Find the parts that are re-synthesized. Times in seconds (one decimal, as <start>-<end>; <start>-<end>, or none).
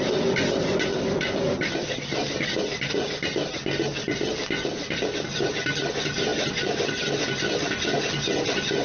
none